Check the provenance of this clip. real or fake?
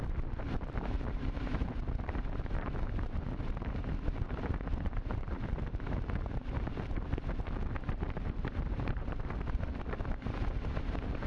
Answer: fake